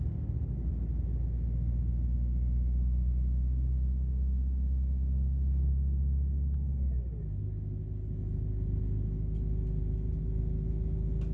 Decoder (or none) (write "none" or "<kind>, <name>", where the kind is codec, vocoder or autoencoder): none